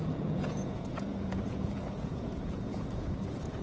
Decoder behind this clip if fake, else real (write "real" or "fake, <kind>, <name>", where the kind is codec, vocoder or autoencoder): fake, vocoder, Vocos